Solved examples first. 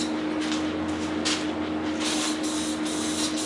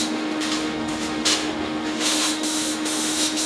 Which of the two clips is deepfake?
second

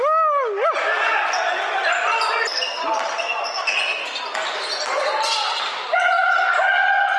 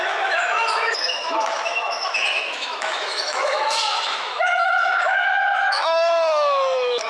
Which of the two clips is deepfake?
second